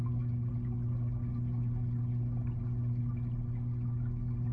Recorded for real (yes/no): yes